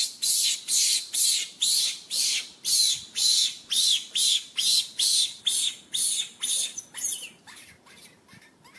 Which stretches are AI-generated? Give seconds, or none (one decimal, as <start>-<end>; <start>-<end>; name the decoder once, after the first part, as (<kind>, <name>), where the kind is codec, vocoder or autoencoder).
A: 0.0-2.8 (vocoder, BigVGAN v2); 6.6-8.8